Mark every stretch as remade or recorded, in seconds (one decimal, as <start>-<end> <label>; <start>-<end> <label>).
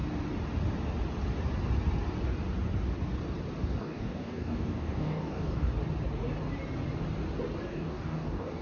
0.0-3.8 recorded; 3.8-5.7 remade; 5.7-7.7 recorded; 7.7-8.6 remade